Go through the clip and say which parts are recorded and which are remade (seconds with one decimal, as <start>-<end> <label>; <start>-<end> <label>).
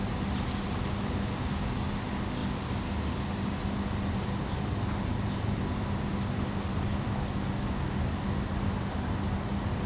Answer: 0.0-9.9 recorded